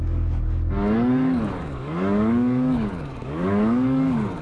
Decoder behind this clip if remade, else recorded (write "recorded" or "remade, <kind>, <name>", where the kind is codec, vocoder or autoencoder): remade, codec, DAC